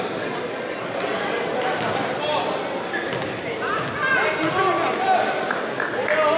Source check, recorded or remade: recorded